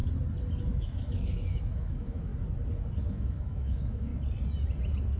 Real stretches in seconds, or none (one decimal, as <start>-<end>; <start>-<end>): 0.0-0.6; 2.3-3.0; 4.1-5.2